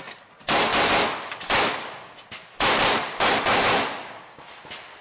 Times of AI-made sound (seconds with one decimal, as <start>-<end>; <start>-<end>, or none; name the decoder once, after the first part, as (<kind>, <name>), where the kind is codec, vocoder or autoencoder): none